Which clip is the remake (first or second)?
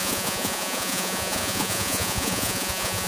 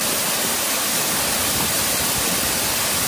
first